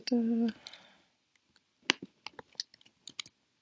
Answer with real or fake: real